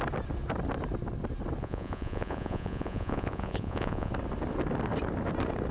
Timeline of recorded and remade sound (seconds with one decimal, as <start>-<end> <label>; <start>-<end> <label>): 0.0-1.6 recorded; 1.6-4.1 remade; 4.1-5.7 recorded